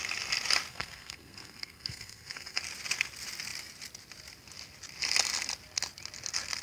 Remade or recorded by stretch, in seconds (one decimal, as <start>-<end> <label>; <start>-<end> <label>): 0.0-0.7 recorded; 0.7-2.6 remade; 2.6-6.6 recorded